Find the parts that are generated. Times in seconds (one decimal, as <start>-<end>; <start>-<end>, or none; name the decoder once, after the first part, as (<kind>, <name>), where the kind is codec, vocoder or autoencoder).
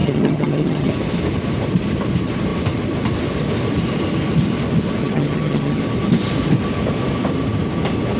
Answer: 0.0-0.9 (vocoder, HiFi-GAN); 5.0-5.8